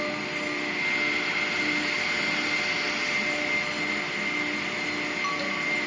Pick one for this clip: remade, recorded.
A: recorded